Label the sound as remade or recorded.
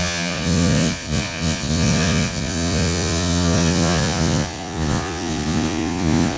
remade